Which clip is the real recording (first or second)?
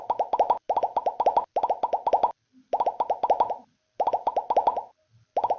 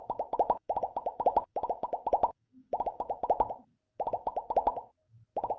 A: first